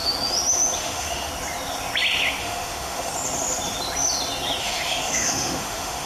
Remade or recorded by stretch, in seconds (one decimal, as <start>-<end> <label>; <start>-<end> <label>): 0.0-0.8 recorded; 0.8-1.3 remade; 1.3-2.4 recorded; 2.4-3.1 remade; 3.1-4.6 recorded; 4.6-6.1 remade